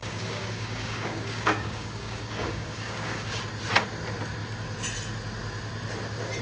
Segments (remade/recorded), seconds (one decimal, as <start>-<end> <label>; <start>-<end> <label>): 0.0-3.4 remade; 3.4-6.4 recorded